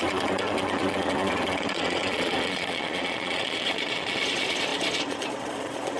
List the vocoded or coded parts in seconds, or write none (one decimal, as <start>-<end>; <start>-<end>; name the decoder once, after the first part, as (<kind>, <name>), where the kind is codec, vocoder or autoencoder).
0.0-6.0 (vocoder, Vocos)